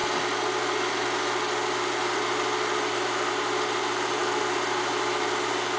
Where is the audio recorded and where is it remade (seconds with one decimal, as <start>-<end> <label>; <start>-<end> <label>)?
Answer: 0.0-5.8 recorded